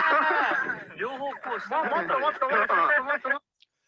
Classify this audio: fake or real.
real